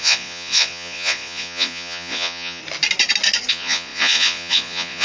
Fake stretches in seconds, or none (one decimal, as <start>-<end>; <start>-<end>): 0.0-2.6; 3.5-5.0